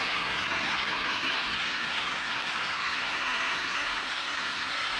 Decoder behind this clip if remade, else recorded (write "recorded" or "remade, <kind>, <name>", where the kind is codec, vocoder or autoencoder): remade, codec, SNAC